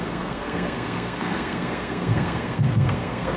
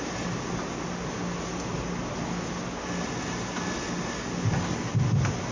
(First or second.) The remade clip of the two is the first